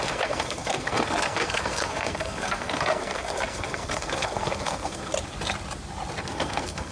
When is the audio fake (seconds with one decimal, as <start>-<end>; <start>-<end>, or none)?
0.0-5.1; 6.2-6.9